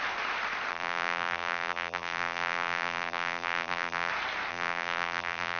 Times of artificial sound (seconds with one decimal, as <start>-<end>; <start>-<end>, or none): 0.7-4.1; 4.5-5.6